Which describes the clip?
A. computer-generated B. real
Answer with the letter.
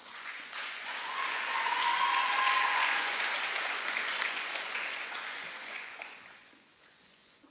A